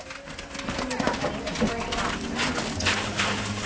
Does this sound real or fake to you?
real